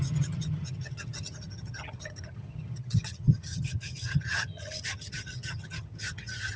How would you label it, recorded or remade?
remade